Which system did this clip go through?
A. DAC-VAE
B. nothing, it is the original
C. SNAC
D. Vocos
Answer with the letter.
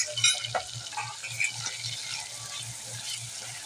B